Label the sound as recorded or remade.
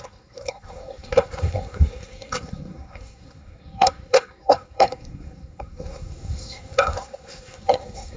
remade